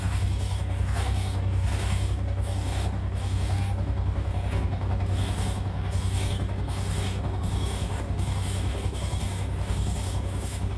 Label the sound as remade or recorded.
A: remade